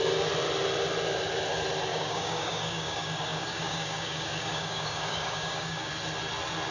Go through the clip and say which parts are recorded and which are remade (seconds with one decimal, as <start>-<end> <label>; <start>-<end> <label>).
0.0-1.9 recorded; 1.9-5.9 remade; 5.9-6.7 recorded

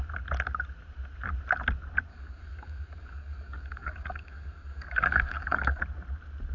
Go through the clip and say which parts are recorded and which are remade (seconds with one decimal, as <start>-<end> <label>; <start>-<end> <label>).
0.0-2.1 recorded; 2.1-5.8 remade; 5.8-6.5 recorded

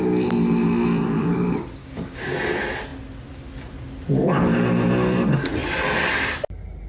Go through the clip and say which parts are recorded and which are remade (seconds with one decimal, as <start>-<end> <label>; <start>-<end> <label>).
0.0-1.8 recorded; 1.8-2.3 remade; 2.3-6.9 recorded

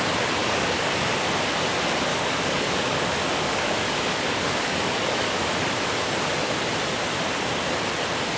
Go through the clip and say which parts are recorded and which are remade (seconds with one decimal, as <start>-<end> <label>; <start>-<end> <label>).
0.0-0.4 recorded; 0.4-1.1 remade; 1.1-2.1 recorded; 2.1-5.7 remade; 5.7-8.4 recorded

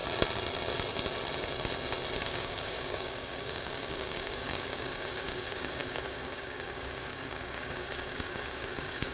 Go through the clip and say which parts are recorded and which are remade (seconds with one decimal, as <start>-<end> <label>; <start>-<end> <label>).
0.0-2.2 recorded; 2.2-9.1 remade

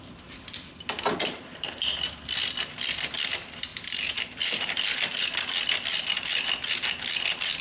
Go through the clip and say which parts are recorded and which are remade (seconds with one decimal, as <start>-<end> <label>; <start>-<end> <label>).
0.0-7.6 recorded